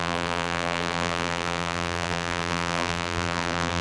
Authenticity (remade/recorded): remade